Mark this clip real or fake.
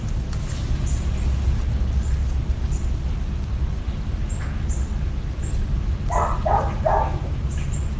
real